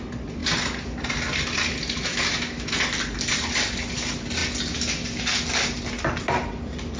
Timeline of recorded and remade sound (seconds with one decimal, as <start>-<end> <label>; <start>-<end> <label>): 0.0-2.1 recorded; 2.1-2.7 remade; 2.7-7.0 recorded